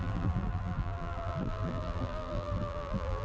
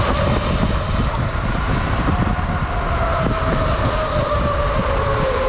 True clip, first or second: second